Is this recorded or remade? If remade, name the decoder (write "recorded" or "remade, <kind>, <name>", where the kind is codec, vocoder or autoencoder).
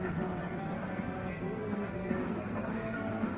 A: remade, codec, SNAC